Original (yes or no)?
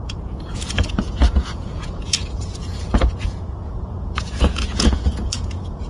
no